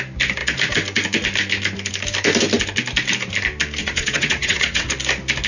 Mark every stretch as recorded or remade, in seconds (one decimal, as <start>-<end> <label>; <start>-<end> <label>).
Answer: 0.0-3.8 recorded; 3.8-4.9 remade; 4.9-5.5 recorded